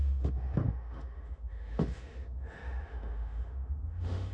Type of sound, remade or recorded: remade